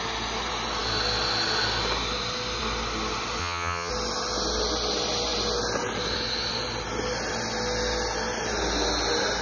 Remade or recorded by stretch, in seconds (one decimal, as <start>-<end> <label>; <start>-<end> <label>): 0.0-3.4 recorded; 3.4-3.9 remade; 3.9-9.4 recorded